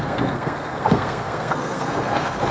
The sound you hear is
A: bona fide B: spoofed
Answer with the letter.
B